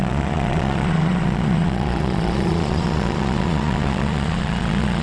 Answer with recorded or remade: remade